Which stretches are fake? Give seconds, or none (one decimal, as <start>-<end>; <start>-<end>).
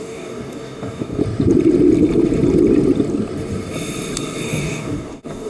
0.0-1.2; 4.5-5.5